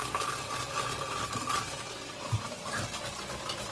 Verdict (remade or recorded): recorded